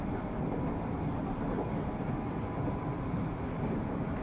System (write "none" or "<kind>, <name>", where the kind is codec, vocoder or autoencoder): vocoder, BigVGAN v2